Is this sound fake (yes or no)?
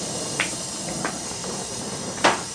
yes